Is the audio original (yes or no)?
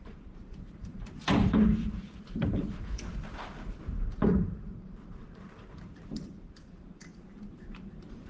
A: no